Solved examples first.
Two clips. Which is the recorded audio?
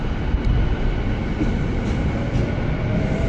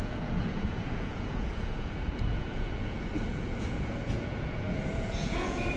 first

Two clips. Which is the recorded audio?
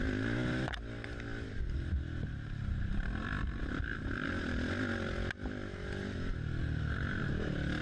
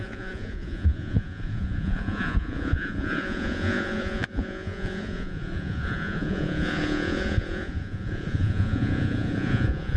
first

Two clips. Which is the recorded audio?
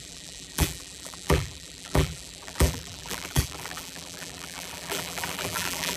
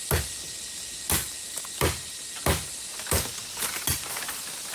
second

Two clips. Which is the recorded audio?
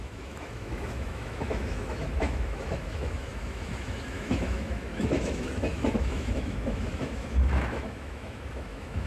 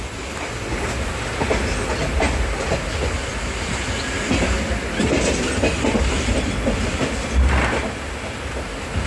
second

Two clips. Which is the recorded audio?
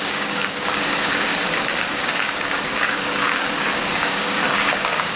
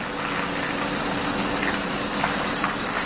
second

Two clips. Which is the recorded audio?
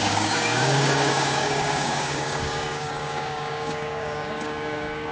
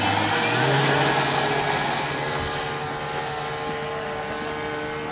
second